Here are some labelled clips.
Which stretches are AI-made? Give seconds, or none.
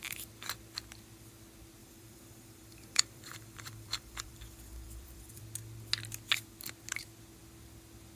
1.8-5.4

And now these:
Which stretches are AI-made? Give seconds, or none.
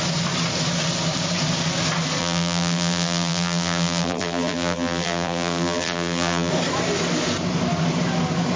2.2-6.5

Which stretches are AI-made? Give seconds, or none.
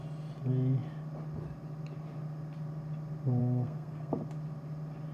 3.4-4.1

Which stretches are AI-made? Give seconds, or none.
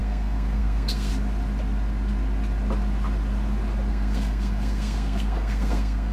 0.0-1.1; 3.9-6.1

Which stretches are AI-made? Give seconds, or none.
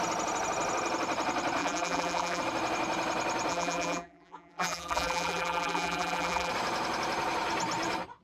1.6-2.4; 3.5-6.5